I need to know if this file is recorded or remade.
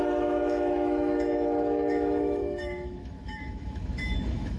remade